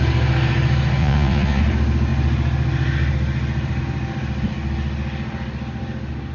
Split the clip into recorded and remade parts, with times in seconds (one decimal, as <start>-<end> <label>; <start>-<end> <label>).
0.0-1.0 recorded; 1.0-1.6 remade; 1.6-6.3 recorded